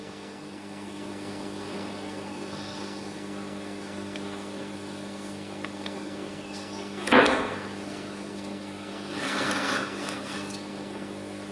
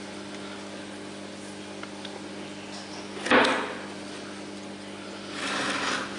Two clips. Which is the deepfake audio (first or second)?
first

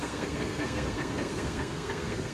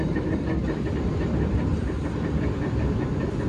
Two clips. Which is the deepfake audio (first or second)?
first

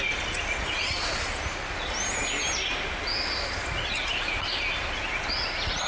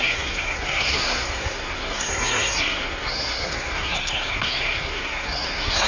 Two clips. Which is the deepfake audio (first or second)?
second